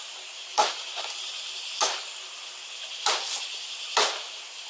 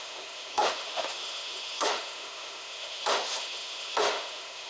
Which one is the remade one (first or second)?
second